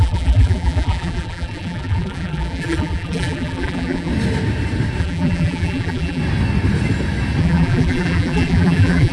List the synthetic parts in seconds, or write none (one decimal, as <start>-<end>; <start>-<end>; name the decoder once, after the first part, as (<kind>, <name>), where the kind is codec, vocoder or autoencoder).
0.0-4.1 (vocoder, BigVGAN v2); 5.0-6.2; 7.4-9.1